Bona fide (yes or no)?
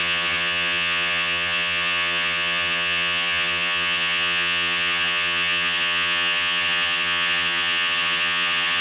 no